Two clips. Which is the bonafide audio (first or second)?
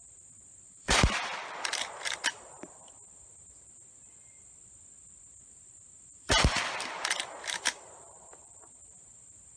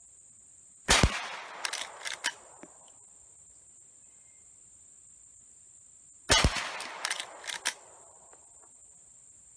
second